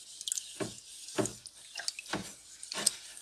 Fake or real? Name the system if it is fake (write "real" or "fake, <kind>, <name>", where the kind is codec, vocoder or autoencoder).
real